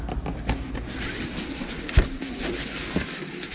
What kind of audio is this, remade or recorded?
recorded